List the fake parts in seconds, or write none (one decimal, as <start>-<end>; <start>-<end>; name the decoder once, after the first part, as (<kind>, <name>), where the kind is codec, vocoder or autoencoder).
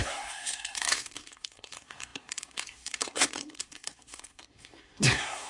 0.0-5.5 (codec, SNAC)